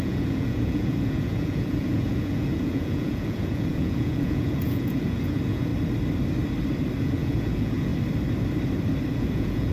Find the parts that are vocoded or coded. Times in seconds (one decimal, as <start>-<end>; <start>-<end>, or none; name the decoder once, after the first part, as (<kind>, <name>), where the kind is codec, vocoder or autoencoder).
0.0-5.7 (vocoder, Vocos); 7.0-7.9; 9.1-9.7